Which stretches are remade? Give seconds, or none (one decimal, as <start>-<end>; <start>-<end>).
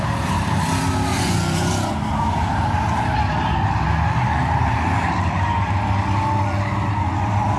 1.1-1.7